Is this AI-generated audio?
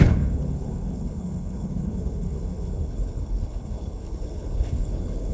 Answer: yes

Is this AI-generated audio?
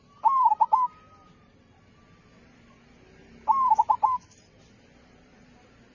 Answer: no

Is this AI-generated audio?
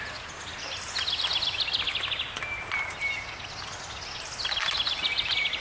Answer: no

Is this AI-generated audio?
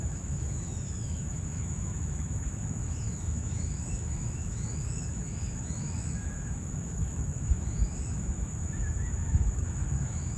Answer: yes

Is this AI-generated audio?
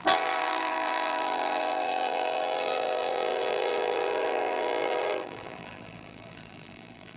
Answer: yes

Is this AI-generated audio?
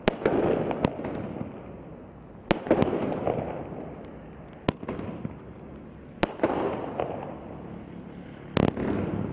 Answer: no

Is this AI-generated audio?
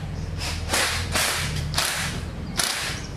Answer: yes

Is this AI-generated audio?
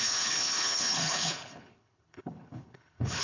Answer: yes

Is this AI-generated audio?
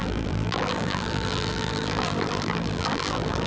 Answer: yes